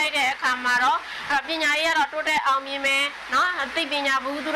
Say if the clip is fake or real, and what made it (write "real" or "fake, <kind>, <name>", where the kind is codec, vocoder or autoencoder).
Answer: real